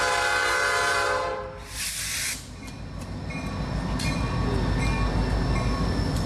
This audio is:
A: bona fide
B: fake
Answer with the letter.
A